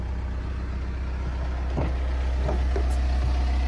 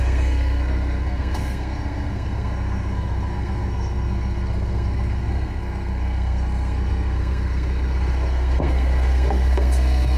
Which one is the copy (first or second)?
second